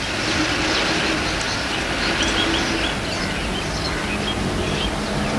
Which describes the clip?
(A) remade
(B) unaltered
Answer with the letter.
B